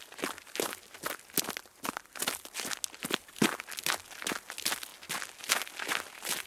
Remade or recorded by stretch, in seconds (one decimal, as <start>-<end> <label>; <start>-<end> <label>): 0.0-6.5 recorded